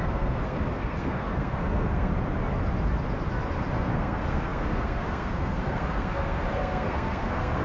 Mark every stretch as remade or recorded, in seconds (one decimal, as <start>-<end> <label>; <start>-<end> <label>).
0.0-2.1 remade; 2.1-3.8 recorded; 3.8-7.6 remade